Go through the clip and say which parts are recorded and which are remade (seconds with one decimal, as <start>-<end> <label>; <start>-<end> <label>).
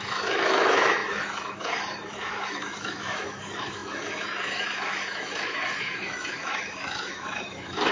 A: 0.0-7.9 remade